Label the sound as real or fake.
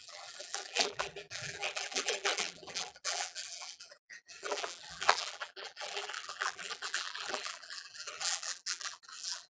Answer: fake